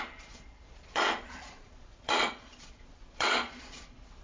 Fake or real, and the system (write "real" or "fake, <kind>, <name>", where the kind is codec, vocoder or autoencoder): fake, vocoder, Vocos